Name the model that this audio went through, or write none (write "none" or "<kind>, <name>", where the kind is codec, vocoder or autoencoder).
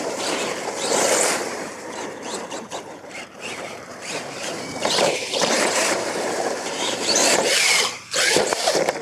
vocoder, BigVGAN v2